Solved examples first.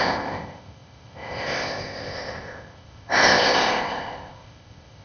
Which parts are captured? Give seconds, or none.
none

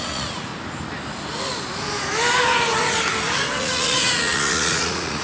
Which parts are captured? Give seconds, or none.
0.5-3.6

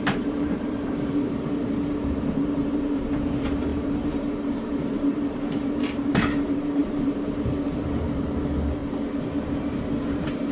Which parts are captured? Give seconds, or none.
8.8-9.5

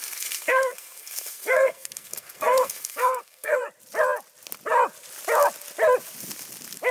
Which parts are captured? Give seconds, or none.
3.6-6.9

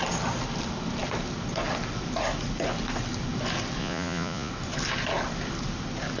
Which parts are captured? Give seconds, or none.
0.0-3.8; 4.5-6.2

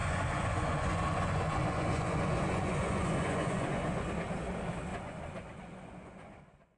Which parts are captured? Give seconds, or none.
4.1-4.9